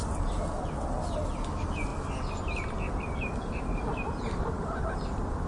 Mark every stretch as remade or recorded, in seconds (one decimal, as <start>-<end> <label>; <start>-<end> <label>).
0.0-1.9 recorded; 1.9-5.5 remade